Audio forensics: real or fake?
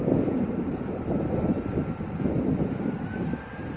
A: fake